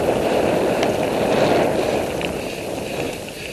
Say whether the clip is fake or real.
real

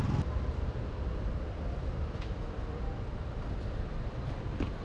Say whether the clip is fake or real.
fake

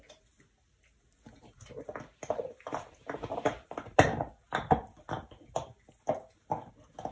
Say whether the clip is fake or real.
real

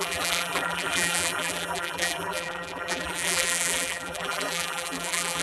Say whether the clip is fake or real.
fake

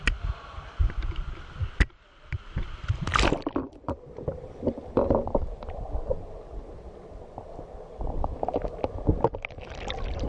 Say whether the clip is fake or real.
real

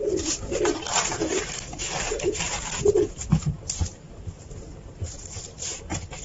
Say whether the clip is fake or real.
fake